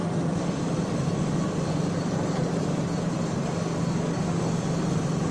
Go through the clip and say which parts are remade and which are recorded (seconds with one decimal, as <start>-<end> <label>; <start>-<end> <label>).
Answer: 0.0-2.5 remade; 2.5-5.3 recorded